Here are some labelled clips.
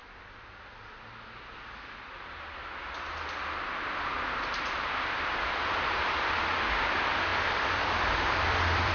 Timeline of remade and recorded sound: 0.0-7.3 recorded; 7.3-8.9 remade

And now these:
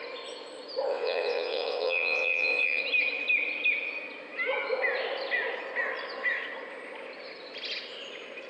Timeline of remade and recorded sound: 0.0-0.9 recorded; 0.9-2.8 remade; 2.8-8.5 recorded